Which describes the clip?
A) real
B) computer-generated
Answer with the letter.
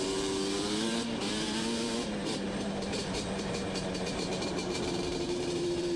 B